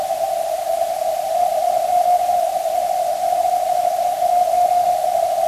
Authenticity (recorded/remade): remade